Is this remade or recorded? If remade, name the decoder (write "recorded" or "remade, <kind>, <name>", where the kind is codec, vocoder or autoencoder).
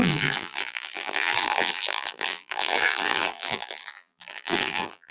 remade, vocoder, BigVGAN v2